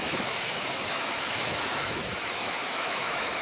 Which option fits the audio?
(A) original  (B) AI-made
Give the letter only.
B